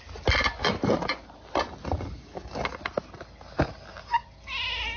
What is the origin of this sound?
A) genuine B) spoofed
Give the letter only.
A